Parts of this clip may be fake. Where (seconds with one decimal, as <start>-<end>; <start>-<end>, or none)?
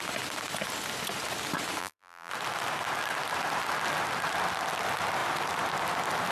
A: 1.8-2.3